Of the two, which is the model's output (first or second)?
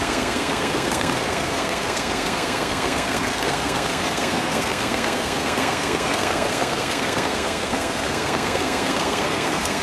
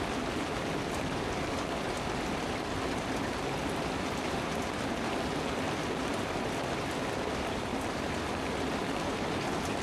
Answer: first